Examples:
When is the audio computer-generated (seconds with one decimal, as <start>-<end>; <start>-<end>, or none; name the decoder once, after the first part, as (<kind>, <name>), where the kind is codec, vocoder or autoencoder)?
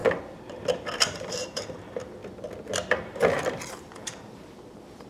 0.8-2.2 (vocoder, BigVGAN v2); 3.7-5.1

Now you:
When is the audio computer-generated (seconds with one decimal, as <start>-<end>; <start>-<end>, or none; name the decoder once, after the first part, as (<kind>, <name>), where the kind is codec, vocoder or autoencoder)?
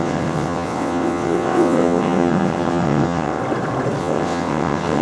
0.0-3.4 (vocoder, WaveNeXt); 4.0-5.0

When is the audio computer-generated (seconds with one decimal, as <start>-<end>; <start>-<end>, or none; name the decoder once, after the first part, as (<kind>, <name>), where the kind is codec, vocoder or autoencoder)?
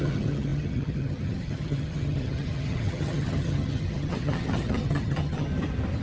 0.0-5.5 (vocoder, HiFi-GAN)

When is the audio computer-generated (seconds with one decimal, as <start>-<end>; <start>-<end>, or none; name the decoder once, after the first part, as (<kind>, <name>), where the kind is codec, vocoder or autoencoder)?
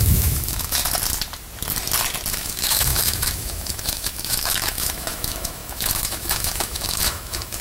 0.0-0.8 (autoencoder, DAC-VAE); 2.3-7.6